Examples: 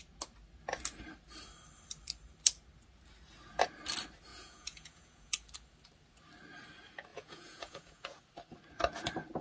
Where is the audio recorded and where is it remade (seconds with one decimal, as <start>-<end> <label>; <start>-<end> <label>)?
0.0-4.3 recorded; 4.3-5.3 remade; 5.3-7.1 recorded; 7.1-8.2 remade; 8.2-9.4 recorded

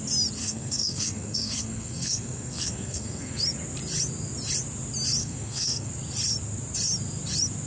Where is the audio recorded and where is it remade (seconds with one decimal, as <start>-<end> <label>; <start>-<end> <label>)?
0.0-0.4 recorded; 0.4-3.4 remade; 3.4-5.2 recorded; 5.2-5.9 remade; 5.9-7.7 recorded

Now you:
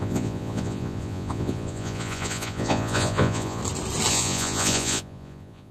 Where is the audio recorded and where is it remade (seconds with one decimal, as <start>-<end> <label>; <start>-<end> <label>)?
0.0-3.6 remade; 3.6-4.1 recorded; 4.1-5.7 remade

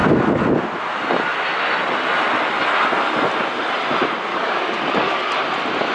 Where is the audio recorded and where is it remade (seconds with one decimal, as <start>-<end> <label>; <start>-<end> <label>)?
0.0-4.3 recorded; 4.3-5.3 remade; 5.3-5.9 recorded